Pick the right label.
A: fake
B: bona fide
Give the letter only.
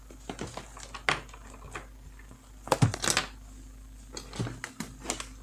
B